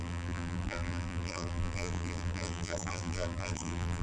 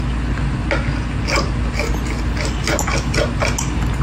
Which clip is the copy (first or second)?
first